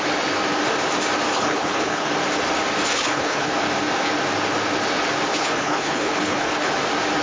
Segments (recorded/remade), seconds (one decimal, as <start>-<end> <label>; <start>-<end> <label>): 0.0-1.3 recorded; 1.3-2.1 remade; 2.1-2.9 recorded; 2.9-3.5 remade; 3.5-5.3 recorded; 5.3-6.7 remade; 6.7-7.2 recorded